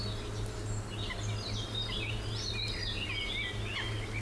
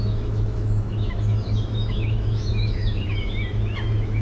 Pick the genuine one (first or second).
first